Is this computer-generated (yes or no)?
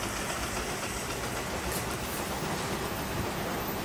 no